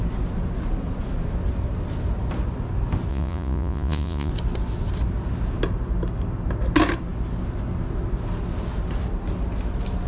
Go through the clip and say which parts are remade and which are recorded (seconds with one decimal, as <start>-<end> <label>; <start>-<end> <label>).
0.0-3.1 recorded; 3.1-4.3 remade; 4.3-10.1 recorded